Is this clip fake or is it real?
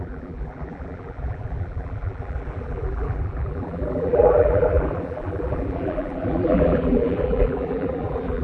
fake